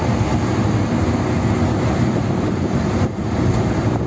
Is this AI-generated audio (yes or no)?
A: no